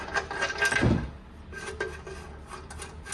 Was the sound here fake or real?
real